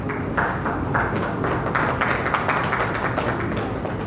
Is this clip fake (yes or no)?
no